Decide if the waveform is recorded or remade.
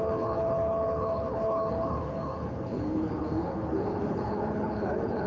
remade